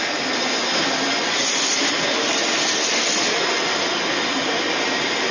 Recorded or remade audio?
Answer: recorded